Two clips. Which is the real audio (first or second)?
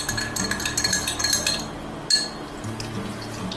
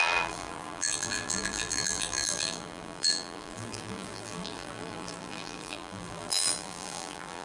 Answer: first